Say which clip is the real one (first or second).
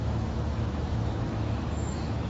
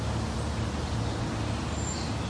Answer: second